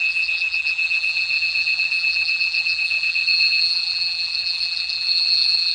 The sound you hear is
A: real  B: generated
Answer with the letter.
B